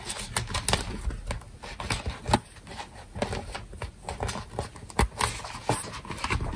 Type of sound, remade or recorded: recorded